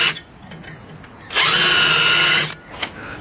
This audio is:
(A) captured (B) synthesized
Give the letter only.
A